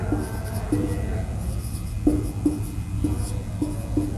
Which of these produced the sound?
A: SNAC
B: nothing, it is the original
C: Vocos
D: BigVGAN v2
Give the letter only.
B